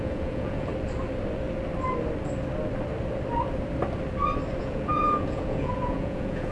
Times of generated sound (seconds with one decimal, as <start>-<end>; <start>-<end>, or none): 0.0-0.7; 4.6-6.5